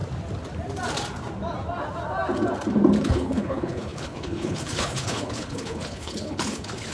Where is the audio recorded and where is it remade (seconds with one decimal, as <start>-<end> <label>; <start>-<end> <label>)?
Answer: 0.0-3.0 recorded; 3.0-6.9 remade